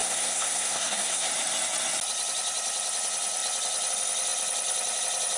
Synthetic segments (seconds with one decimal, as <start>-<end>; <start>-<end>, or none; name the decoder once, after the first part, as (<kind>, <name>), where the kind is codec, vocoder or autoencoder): 0.0-1.3 (codec, SNAC)